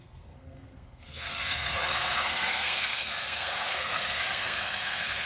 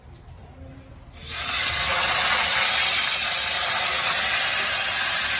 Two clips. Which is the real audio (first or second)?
second